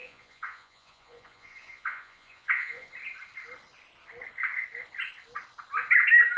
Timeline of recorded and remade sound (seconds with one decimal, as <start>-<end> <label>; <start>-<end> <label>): 0.0-2.9 remade; 2.9-6.4 recorded